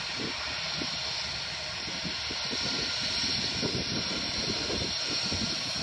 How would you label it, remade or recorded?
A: recorded